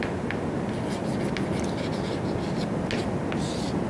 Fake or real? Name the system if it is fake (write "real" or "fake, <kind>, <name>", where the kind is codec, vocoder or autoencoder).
real